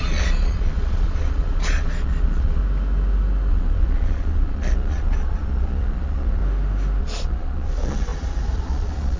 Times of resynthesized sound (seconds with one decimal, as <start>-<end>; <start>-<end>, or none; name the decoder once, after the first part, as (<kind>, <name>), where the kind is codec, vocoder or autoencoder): 0.0-2.6 (vocoder, Vocos); 3.5-6.4; 7.0-9.2